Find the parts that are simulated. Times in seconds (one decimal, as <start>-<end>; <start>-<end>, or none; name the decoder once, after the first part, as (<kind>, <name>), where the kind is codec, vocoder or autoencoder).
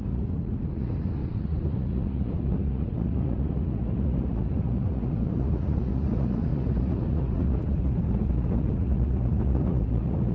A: 0.0-10.3 (vocoder, Vocos)